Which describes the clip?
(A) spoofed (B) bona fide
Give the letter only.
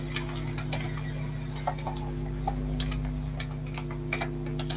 B